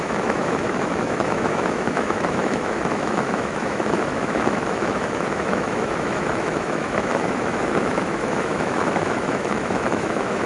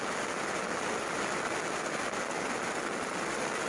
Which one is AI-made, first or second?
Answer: first